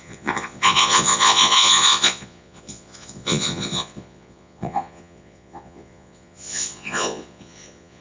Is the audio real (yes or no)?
no